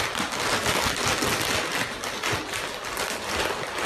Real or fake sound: real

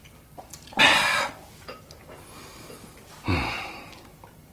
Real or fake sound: real